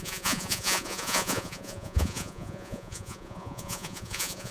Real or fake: fake